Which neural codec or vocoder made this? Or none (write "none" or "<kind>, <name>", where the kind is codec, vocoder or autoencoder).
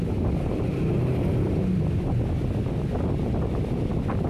none